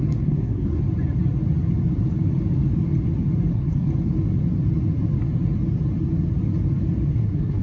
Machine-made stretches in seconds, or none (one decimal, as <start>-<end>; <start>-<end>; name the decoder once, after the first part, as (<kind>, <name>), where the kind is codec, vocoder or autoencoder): 0.0-0.8 (codec, SNAC); 3.5-3.9; 7.1-7.6